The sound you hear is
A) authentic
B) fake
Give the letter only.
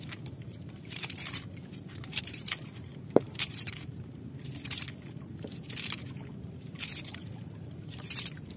B